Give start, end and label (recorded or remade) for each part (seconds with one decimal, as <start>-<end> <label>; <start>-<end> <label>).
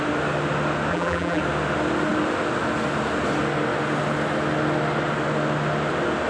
0.0-0.9 recorded; 0.9-1.4 remade; 1.4-6.3 recorded